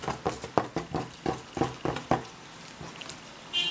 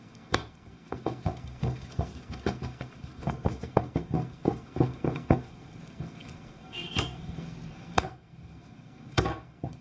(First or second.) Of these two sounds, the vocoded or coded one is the second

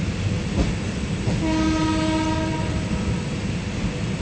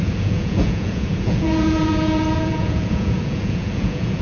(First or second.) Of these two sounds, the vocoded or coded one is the second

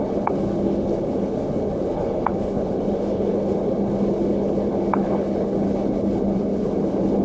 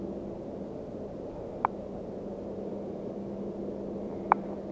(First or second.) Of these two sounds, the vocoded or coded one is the first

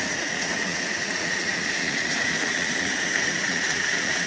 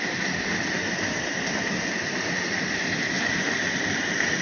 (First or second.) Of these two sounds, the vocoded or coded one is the first